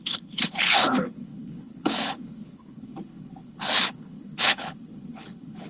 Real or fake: fake